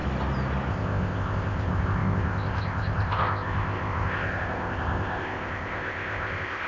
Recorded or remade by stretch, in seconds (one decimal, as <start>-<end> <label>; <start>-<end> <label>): 0.0-0.7 recorded; 0.7-6.7 remade

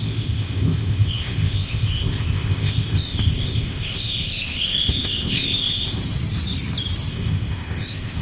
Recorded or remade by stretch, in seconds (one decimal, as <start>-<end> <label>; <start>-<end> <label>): 0.0-6.0 remade; 6.0-7.1 recorded; 7.1-8.2 remade